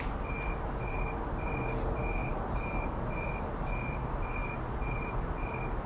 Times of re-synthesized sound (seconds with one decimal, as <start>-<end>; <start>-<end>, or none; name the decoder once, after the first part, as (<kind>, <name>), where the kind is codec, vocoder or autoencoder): 2.2-3.0 (vocoder, BigVGAN v2); 4.4-5.5